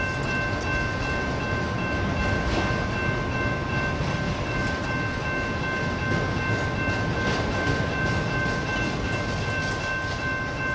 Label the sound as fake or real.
real